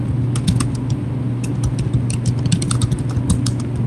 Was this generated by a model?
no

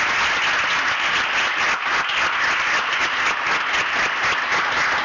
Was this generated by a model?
no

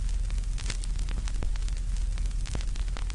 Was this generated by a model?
no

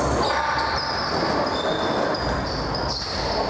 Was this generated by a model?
no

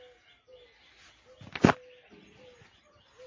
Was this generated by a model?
no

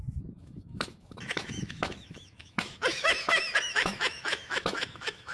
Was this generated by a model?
yes